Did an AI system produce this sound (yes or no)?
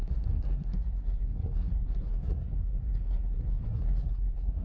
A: yes